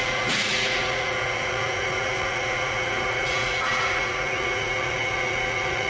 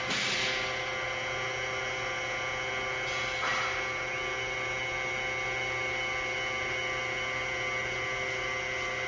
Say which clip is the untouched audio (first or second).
second